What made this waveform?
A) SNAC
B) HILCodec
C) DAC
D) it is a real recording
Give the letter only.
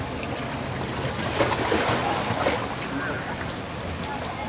D